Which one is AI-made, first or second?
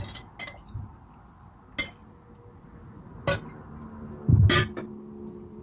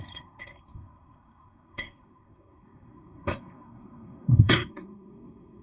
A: second